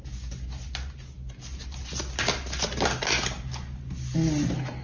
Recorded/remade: recorded